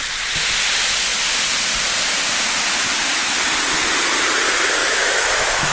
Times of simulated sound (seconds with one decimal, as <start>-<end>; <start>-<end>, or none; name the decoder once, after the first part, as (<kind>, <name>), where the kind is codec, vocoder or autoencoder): 4.8-5.7 (autoencoder, DAC-VAE)